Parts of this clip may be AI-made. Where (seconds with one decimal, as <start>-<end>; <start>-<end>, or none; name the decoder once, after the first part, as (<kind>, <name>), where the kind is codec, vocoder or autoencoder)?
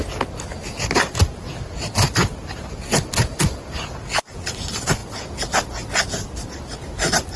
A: none